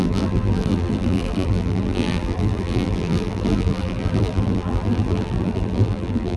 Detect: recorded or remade remade